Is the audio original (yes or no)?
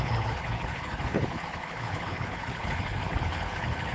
no